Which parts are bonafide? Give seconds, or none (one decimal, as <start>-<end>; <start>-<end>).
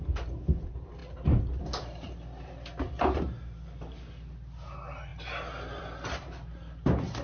0.0-7.2